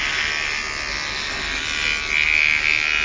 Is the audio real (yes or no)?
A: yes